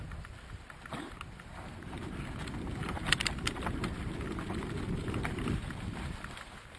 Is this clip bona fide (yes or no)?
no